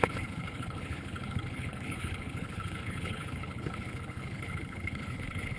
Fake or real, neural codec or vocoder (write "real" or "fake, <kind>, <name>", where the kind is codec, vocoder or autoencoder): fake, codec, HILCodec